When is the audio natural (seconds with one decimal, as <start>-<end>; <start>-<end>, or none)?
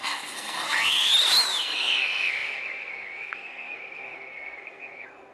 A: 1.1-1.6